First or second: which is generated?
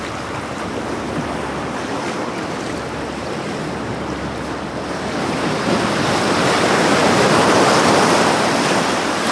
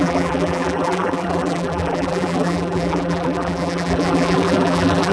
second